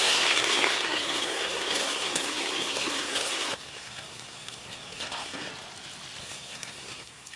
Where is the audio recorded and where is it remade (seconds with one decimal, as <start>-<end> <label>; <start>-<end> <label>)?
0.0-5.5 remade; 5.5-6.2 recorded; 6.2-7.4 remade